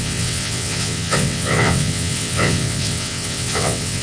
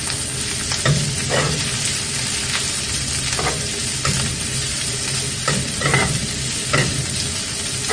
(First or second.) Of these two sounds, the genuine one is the second